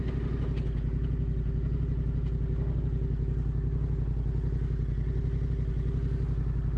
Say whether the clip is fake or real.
real